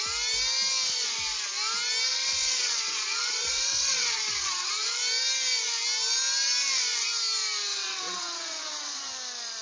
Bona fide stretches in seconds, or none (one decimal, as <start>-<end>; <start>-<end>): 0.0-2.1; 5.0-7.7; 9.1-9.6

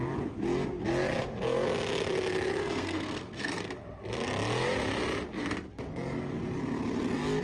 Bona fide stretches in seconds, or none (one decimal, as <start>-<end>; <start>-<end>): 0.0-2.6; 3.6-7.4